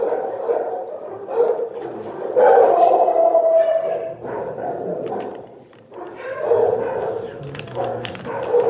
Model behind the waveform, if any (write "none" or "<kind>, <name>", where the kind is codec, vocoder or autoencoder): vocoder, BigVGAN v2